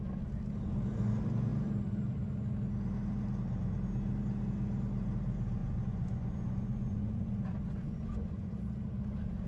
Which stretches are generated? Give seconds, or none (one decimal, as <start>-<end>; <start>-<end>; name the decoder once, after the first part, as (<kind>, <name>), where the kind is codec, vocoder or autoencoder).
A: 5.6-8.6 (vocoder, Vocos)